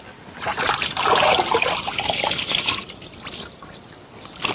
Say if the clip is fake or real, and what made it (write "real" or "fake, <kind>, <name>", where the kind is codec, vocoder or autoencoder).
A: fake, vocoder, BigVGAN v2